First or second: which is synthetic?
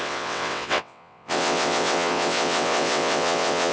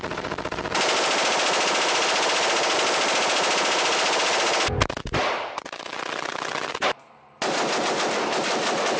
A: first